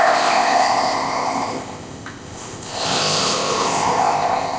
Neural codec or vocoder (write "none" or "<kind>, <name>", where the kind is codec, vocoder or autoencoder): codec, ZipCodec